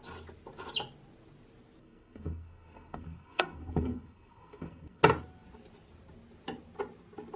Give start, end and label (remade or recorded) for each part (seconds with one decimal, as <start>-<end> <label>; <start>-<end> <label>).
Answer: 0.0-1.8 recorded; 1.8-5.0 remade; 5.0-7.4 recorded